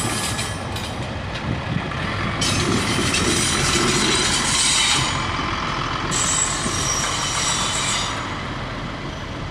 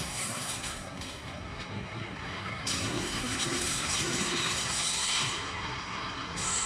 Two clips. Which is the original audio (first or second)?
first